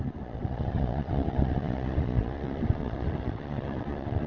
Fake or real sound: fake